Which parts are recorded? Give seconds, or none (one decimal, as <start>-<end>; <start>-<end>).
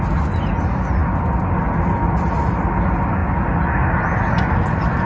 0.0-5.0